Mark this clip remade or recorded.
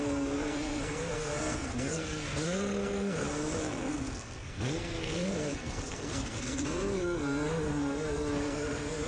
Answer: remade